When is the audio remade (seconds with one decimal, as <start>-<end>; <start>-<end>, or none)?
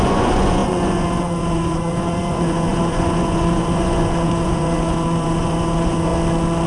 0.0-6.1